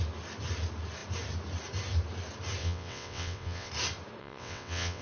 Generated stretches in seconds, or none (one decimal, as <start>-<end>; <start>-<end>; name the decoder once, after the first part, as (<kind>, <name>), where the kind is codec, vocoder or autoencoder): 2.6-3.7 (vocoder, WaveNeXt); 4.2-5.0